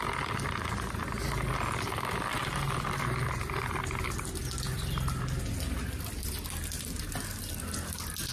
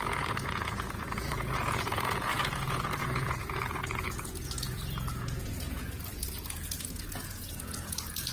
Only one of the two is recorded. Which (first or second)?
first